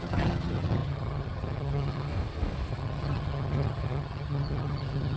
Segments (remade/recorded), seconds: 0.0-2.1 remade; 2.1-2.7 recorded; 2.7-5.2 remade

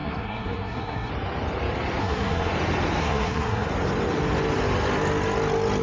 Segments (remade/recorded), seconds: 0.0-1.1 remade; 1.1-2.0 recorded; 2.0-2.5 remade; 2.5-3.0 recorded; 3.0-3.7 remade; 3.7-5.8 recorded

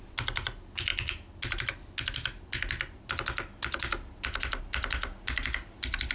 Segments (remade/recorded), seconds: 0.0-6.1 recorded

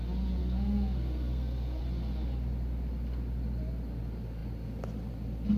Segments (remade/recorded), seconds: 0.0-0.4 recorded; 0.4-1.8 remade; 1.8-5.6 recorded

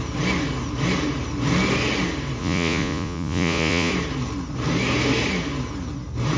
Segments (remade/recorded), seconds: 0.0-2.4 recorded; 2.4-3.9 remade; 3.9-6.4 recorded